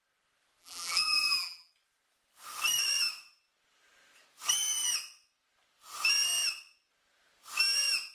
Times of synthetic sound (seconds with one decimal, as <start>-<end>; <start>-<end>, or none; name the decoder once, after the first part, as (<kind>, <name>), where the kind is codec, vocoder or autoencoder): 0.6-1.7 (vocoder, BigVGAN v2)